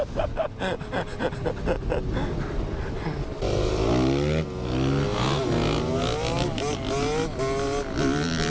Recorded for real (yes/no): yes